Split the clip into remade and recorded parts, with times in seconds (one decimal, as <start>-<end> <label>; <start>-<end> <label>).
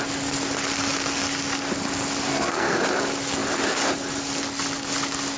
0.0-2.3 recorded; 2.3-2.8 remade; 2.8-5.4 recorded